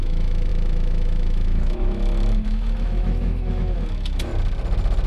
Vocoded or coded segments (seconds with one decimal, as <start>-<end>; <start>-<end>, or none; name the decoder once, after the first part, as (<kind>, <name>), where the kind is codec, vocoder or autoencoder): 0.0-4.3 (autoencoder, DAC-VAE)